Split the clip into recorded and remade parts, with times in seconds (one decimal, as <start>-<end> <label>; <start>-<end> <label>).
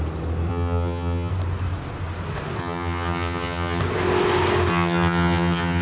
0.0-0.5 recorded; 0.5-1.3 remade; 1.3-2.6 recorded; 2.6-3.8 remade; 3.8-4.7 recorded; 4.7-5.8 remade